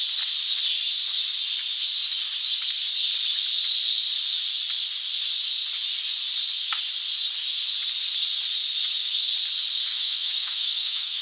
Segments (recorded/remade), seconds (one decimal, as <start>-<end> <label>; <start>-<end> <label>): 0.0-9.9 recorded; 9.9-11.2 remade